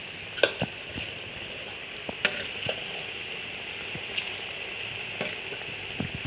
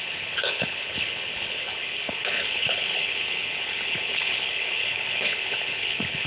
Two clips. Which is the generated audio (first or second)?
second